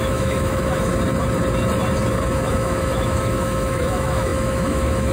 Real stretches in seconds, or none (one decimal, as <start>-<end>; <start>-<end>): 0.9-2.5